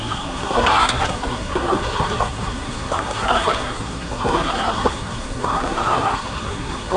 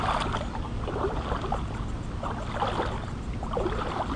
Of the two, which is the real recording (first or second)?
second